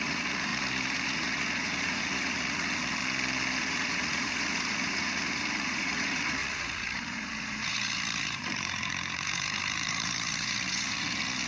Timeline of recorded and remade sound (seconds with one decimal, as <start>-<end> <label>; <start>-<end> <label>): 0.0-3.0 remade; 3.0-3.6 recorded; 3.6-11.5 remade